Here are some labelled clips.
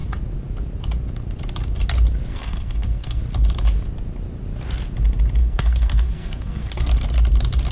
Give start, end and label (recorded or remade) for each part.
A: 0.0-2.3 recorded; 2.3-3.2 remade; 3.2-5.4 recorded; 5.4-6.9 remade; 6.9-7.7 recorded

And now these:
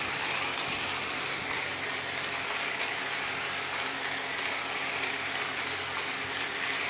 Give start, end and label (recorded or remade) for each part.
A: 0.0-6.9 recorded